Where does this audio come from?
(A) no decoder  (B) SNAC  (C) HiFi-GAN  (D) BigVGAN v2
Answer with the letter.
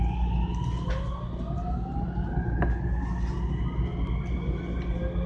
A